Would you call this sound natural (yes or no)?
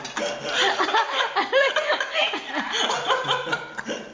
yes